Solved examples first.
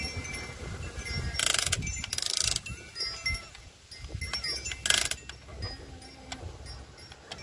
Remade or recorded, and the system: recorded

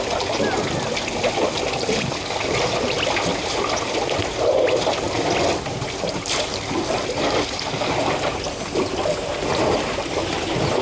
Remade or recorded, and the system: recorded